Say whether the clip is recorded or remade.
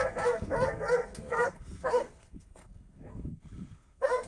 remade